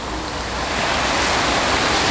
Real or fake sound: real